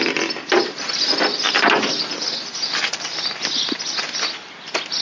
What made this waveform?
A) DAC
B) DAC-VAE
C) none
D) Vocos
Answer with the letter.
C